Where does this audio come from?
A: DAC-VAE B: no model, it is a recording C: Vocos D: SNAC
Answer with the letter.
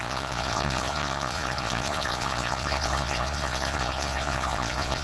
C